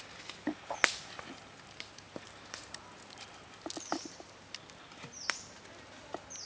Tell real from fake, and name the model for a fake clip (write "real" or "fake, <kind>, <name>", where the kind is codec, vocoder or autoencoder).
real